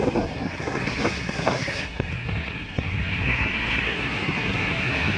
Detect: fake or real fake